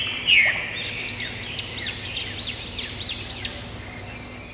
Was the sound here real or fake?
real